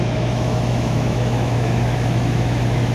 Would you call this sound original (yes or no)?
no